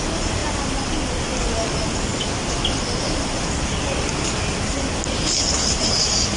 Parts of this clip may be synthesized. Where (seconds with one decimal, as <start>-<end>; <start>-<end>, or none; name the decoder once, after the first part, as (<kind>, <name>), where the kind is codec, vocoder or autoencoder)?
none